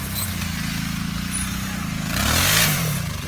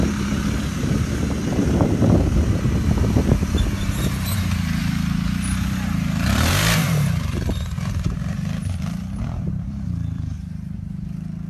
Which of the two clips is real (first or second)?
first